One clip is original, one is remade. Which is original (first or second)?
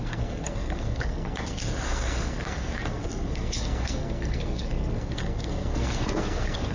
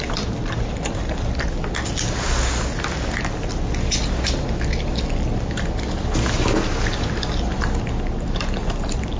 second